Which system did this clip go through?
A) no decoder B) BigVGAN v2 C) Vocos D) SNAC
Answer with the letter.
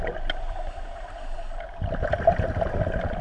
A